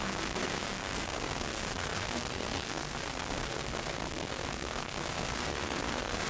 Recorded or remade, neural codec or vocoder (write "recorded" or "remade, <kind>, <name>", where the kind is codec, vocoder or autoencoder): remade, codec, SNAC